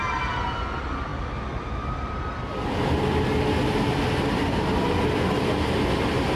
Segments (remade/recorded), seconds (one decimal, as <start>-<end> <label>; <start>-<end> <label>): 0.0-6.4 recorded